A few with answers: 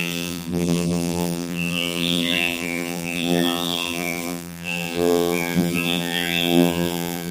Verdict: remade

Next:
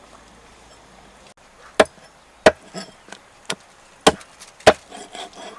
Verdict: recorded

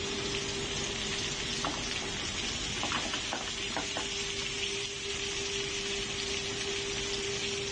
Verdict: recorded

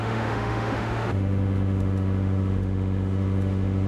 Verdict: remade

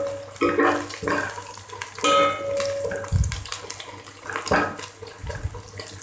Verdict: recorded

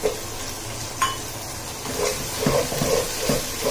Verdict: recorded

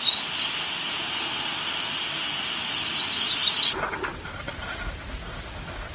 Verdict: recorded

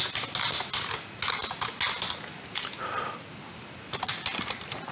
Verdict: recorded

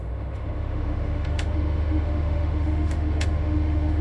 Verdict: remade